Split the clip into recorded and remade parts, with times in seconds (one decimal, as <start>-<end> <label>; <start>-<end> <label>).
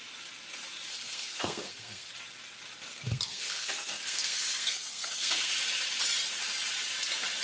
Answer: 0.0-0.9 recorded; 0.9-2.1 remade; 2.1-2.9 recorded; 2.9-5.5 remade; 5.5-7.4 recorded